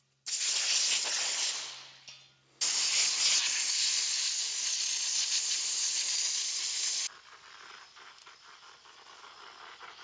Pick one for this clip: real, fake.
real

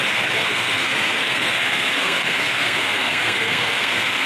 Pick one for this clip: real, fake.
fake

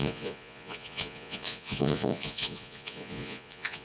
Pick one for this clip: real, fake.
fake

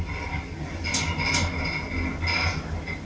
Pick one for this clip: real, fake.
real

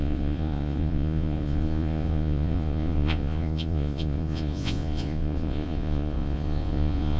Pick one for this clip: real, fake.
fake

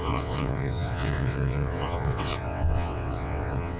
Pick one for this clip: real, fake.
fake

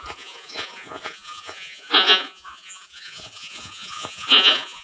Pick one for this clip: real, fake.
fake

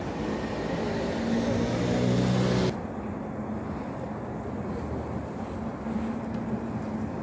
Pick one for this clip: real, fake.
real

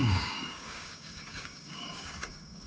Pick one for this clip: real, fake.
fake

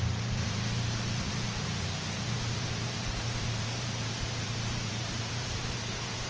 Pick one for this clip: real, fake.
fake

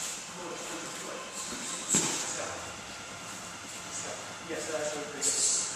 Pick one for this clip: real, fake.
real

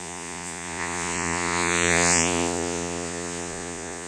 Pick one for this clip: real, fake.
fake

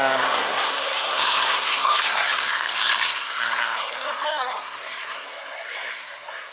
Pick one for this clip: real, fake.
fake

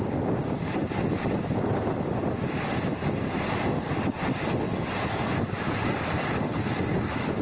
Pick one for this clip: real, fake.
real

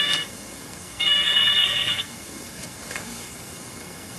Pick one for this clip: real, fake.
fake